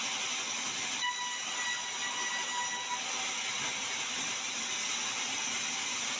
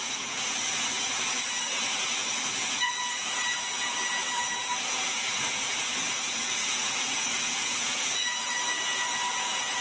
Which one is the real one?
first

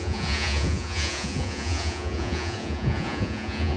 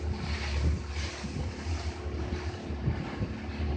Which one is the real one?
second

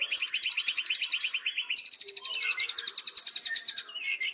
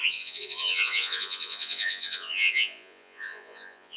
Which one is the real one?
first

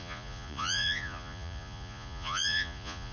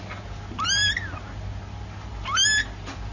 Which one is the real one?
second